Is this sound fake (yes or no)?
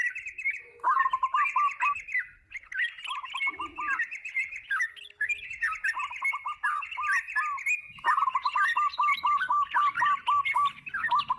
no